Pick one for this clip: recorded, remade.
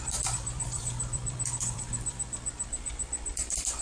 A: remade